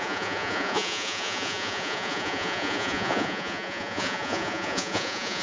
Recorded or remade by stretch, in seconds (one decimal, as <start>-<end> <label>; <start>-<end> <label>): 0.0-5.4 remade